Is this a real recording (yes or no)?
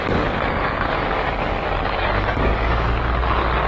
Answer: no